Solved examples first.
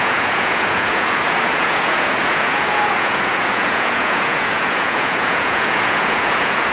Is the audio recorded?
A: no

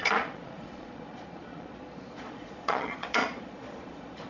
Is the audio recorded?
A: no